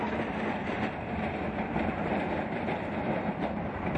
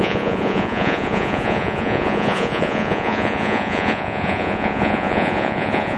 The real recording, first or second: first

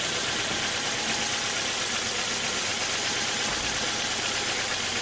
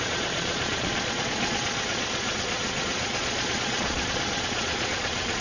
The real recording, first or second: first